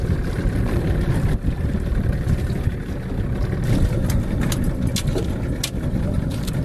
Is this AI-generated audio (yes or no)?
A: no